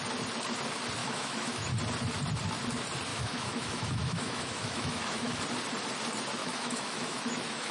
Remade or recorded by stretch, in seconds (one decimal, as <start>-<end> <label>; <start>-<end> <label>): 0.0-1.0 recorded; 1.0-1.7 remade; 1.7-3.1 recorded; 3.1-5.4 remade; 5.4-6.4 recorded; 6.4-7.7 remade